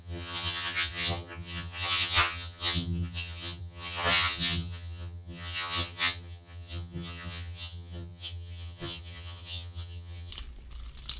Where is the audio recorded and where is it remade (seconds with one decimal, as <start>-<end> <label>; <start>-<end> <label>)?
0.0-10.3 remade; 10.3-11.2 recorded